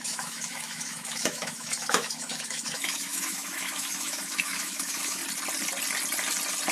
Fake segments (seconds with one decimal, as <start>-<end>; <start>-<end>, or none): 0.0-5.2